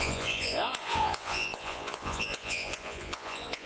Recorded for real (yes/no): no